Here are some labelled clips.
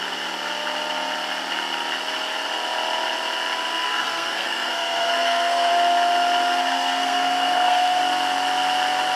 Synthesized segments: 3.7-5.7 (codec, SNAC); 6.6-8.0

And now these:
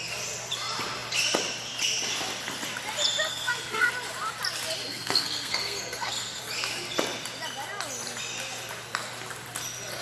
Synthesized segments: 3.3-3.9 (codec, SNAC); 4.9-6.4

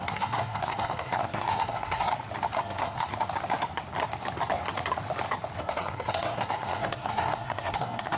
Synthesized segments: 0.0-2.1 (codec, SNAC); 2.6-3.1; 5.6-8.2

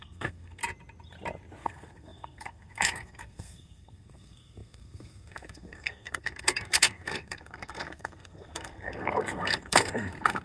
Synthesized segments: 0.0-0.6 (codec, SNAC); 1.6-10.4

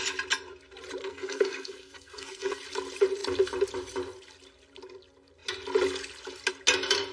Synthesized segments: 1.0-2.6 (codec, SNAC)